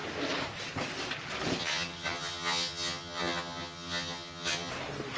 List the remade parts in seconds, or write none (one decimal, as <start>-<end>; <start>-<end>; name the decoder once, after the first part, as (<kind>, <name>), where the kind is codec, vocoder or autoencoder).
1.6-4.7 (vocoder, HiFi-GAN)

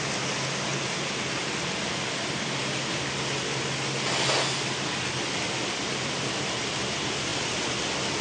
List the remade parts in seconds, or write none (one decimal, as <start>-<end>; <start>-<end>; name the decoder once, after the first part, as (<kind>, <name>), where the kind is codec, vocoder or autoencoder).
none

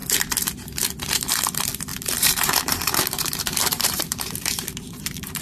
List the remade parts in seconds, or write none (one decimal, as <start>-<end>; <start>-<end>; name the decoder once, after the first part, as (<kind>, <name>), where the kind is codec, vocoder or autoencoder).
1.9-5.4 (vocoder, BigVGAN v2)